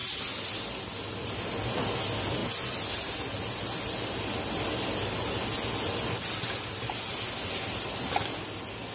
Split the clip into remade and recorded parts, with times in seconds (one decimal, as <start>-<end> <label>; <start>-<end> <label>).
0.0-8.9 recorded

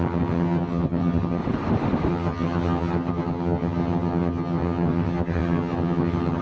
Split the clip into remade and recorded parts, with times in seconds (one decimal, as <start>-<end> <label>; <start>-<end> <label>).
0.0-1.4 remade; 1.4-2.1 recorded; 2.1-6.4 remade

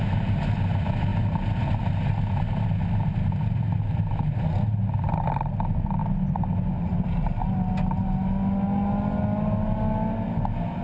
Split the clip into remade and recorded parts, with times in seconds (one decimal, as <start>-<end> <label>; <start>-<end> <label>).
0.0-10.8 recorded

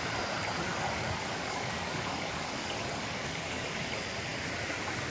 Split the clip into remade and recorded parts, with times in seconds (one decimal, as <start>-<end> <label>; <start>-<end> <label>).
0.0-0.7 recorded; 0.7-3.8 remade; 3.8-5.1 recorded

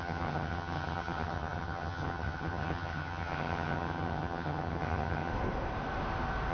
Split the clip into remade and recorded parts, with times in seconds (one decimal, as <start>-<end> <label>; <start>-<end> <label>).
0.0-5.3 remade; 5.3-6.5 recorded

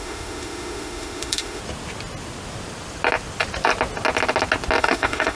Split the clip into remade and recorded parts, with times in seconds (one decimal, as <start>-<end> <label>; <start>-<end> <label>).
0.0-1.6 remade; 1.6-4.8 recorded; 4.8-5.3 remade